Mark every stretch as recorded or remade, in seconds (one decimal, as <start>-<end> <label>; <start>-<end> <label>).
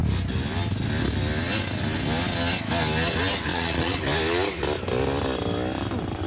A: 0.0-3.5 recorded; 3.5-4.0 remade; 4.0-6.3 recorded